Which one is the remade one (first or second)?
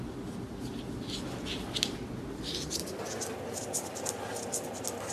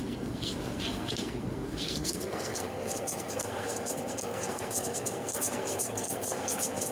second